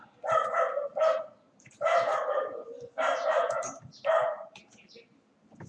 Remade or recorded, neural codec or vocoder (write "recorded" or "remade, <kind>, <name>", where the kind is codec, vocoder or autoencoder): remade, vocoder, BigVGAN v2